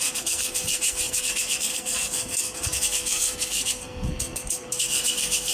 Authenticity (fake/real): fake